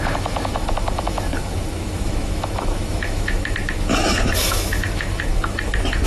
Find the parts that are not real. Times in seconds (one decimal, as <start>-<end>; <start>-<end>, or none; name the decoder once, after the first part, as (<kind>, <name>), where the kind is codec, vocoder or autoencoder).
0.0-6.1 (autoencoder, DAC-VAE)